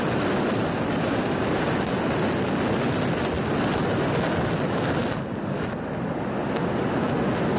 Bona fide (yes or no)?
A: yes